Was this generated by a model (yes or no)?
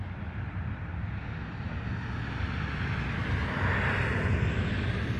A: no